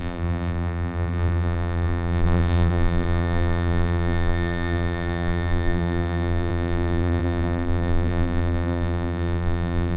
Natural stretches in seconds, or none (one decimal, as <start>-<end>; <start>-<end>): none